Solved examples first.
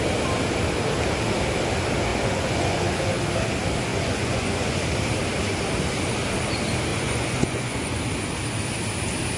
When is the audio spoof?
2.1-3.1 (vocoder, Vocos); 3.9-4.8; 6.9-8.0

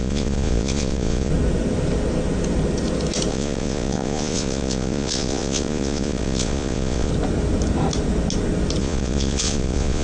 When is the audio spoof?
0.0-1.3 (vocoder, Vocos); 3.3-7.1; 8.8-10.0

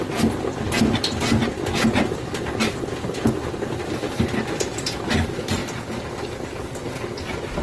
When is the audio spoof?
none

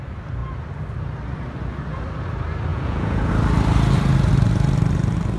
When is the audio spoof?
2.7-3.3 (vocoder, Vocos)

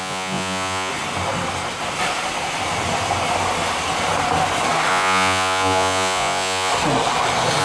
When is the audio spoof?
0.0-0.9 (vocoder, Vocos); 4.9-6.7

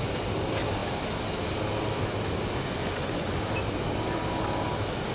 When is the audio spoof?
2.8-3.4 (vocoder, Vocos)

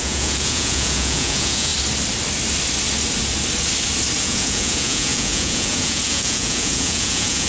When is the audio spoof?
0.0-1.7 (vocoder, Vocos); 4.2-7.5